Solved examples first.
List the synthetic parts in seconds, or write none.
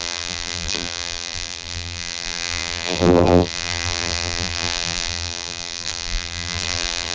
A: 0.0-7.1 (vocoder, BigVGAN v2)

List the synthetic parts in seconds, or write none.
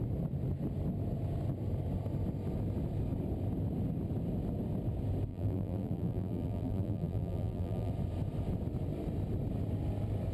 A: 5.3-7.9 (vocoder, BigVGAN v2)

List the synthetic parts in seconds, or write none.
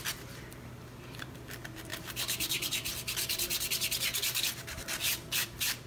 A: 0.0-5.9 (vocoder, BigVGAN v2)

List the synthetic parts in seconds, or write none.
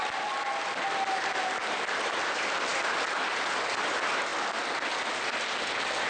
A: 1.6-2.2 (vocoder, BigVGAN v2)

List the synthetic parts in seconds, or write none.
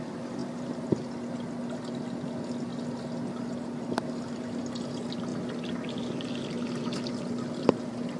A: 0.4-1.0 (vocoder, BigVGAN v2)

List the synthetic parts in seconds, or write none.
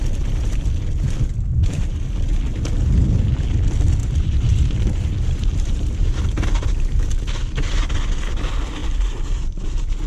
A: 1.6-2.1 (vocoder, BigVGAN v2); 4.0-7.2; 8.8-9.6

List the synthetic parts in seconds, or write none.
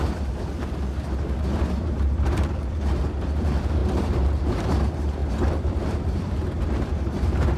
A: 0.0-5.2 (vocoder, BigVGAN v2); 5.7-7.6